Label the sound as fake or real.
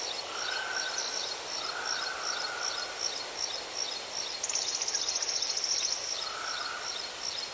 real